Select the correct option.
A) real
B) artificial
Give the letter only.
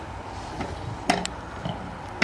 A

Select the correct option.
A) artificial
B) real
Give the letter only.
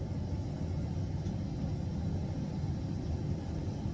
B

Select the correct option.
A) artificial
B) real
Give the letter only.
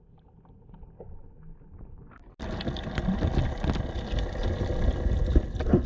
B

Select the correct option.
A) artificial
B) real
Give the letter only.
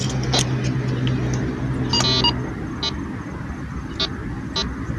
B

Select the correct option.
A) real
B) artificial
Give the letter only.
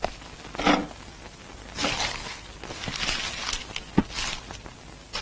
A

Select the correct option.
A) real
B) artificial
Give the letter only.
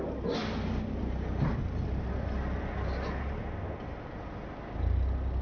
A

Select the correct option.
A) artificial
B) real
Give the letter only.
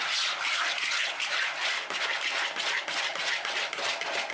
B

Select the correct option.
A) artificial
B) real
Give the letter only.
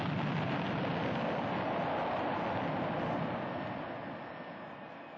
B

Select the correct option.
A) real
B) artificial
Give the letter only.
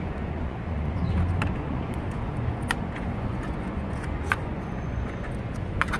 B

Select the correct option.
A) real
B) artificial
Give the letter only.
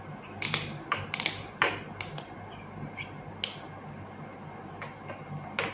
A